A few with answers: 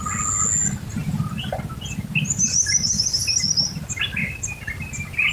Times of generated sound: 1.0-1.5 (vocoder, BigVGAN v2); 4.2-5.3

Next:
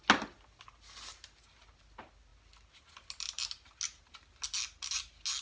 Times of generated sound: none

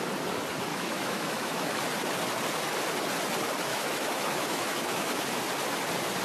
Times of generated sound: 0.7-1.7 (autoencoder, DAC-VAE); 3.7-5.4

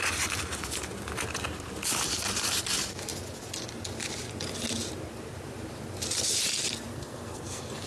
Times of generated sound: 6.9-7.9 (codec, SNAC)

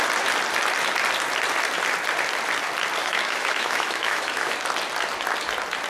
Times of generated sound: 3.0-4.5 (autoencoder, DAC-VAE)